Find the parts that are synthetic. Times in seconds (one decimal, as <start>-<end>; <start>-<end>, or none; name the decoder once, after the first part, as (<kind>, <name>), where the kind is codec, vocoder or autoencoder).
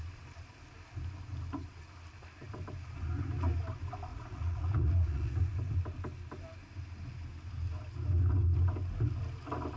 4.1-5.4 (vocoder, Vocos)